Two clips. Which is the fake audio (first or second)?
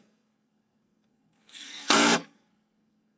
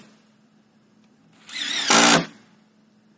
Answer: first